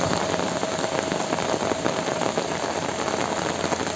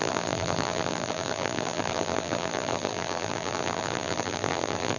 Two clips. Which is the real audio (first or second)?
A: first